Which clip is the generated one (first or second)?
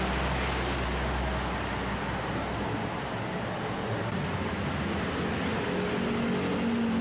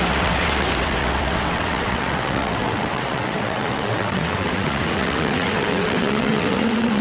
second